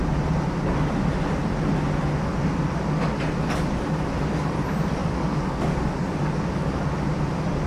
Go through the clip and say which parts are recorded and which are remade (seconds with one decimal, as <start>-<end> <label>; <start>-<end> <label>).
0.0-5.0 recorded; 5.0-6.8 remade; 6.8-7.7 recorded